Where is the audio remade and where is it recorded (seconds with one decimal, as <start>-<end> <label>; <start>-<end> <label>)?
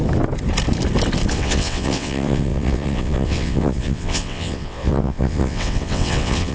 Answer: 0.0-1.3 recorded; 1.3-6.5 remade